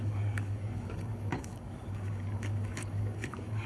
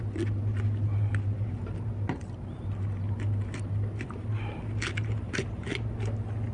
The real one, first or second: second